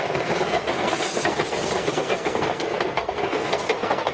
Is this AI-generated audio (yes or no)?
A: yes